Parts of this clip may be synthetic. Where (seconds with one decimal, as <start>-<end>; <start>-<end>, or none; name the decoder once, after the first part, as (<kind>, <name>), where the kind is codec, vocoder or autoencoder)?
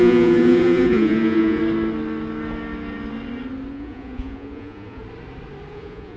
0.0-1.6 (vocoder, Vocos); 3.7-5.0; 5.7-6.2